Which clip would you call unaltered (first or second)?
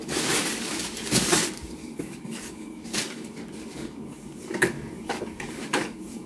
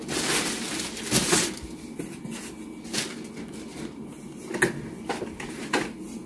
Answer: second